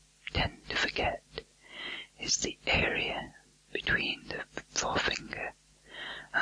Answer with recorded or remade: recorded